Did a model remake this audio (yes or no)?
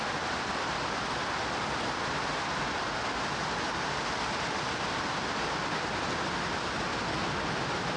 no